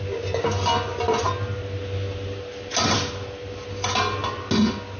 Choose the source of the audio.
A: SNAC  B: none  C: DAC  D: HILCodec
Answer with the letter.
B